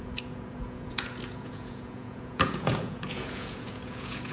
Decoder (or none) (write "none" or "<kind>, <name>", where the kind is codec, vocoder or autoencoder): vocoder, Vocos